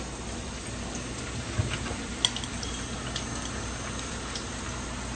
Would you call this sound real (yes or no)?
yes